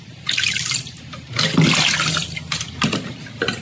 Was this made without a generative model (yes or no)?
yes